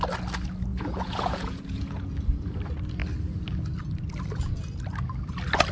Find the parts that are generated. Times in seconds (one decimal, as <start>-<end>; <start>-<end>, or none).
0.7-2.1